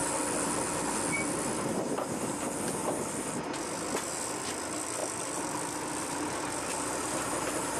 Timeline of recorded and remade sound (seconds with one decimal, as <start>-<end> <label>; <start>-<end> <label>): 0.0-0.5 remade; 0.5-2.8 recorded; 2.8-3.4 remade; 3.4-5.0 recorded; 5.0-6.9 remade; 6.9-7.8 recorded